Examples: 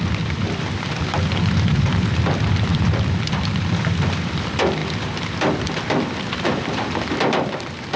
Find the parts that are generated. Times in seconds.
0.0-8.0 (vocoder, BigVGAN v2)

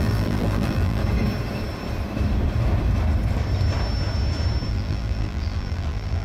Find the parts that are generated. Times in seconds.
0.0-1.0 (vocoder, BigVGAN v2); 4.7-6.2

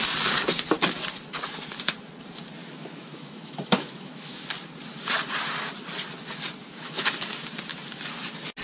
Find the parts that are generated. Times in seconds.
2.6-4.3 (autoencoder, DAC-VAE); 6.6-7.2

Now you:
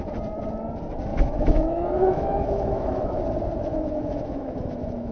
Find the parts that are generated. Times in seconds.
1.1-3.2 (autoencoder, DAC-VAE); 3.7-5.1

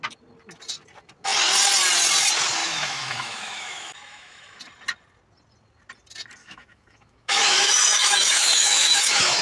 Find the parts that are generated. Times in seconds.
2.6-4.6 (autoencoder, DAC-VAE); 6.4-9.4